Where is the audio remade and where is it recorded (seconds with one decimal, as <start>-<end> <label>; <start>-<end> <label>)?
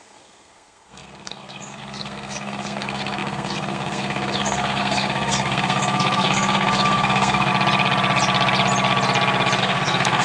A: 0.0-7.5 remade; 7.5-9.6 recorded; 9.6-10.2 remade